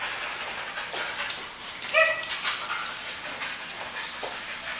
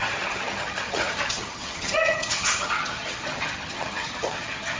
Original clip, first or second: first